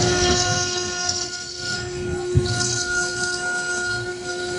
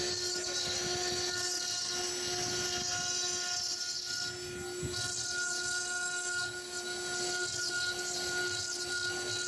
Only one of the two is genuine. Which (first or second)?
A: second